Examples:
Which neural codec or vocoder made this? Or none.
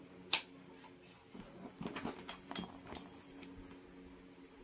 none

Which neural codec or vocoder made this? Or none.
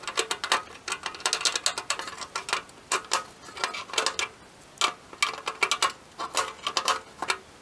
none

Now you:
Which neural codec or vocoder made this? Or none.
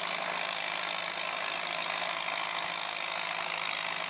none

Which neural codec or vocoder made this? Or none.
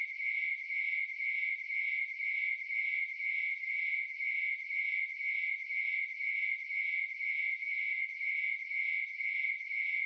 vocoder, Vocos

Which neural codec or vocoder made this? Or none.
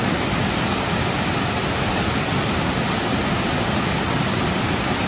none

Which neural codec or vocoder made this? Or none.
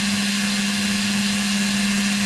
none